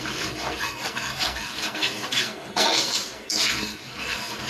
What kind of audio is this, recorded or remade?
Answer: remade